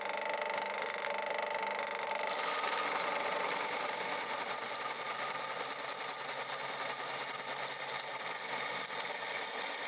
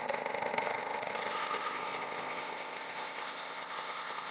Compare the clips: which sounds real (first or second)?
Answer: first